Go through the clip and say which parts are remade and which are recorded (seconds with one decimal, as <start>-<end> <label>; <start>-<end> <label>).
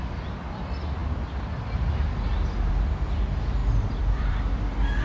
0.0-3.6 recorded; 3.6-4.4 remade; 4.4-5.0 recorded